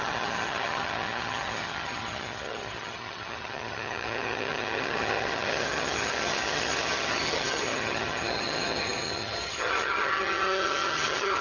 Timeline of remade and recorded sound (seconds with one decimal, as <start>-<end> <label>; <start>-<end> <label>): 0.0-11.4 remade